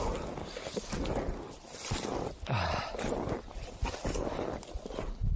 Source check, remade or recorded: recorded